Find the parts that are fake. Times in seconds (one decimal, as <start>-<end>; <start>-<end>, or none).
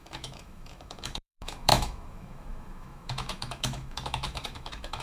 0.0-5.0